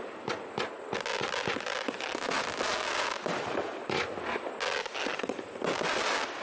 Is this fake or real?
real